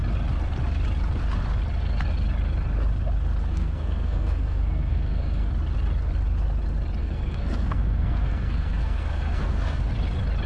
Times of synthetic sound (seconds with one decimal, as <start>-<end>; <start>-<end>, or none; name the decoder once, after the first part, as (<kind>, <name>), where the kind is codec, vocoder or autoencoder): 3.5-5.5 (codec, SNAC); 7.0-9.8

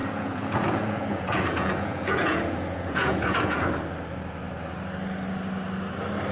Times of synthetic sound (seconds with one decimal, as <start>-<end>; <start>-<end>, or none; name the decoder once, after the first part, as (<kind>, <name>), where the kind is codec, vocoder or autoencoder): 0.0-3.7 (vocoder, Vocos)

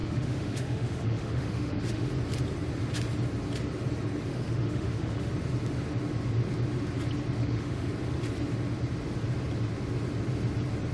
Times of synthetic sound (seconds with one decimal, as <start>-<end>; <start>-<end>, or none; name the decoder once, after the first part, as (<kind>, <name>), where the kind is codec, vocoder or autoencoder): 0.0-2.1 (autoencoder, DAC-VAE); 4.3-5.3; 7.4-7.9

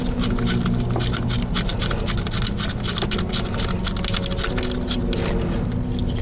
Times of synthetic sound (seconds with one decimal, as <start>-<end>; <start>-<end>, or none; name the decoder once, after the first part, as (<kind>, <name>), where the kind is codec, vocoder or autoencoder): none

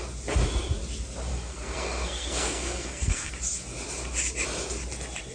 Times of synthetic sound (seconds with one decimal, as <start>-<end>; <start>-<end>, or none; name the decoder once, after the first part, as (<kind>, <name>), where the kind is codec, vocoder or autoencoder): 1.3-3.3 (codec, SNAC)